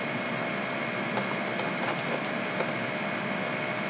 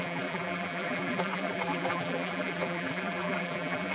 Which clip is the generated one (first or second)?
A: second